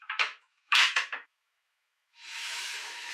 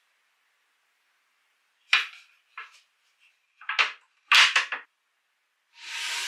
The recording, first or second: second